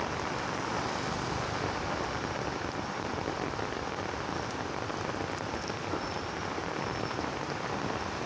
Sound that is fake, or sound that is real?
real